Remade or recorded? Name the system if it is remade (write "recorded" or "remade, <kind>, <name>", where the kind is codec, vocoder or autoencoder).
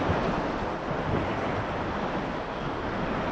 recorded